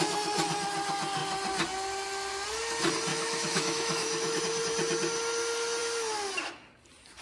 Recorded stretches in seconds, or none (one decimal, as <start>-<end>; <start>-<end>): 0.0-3.1; 4.4-7.2